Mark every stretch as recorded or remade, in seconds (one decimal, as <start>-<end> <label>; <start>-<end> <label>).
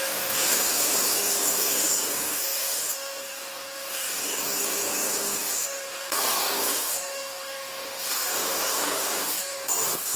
0.0-10.2 remade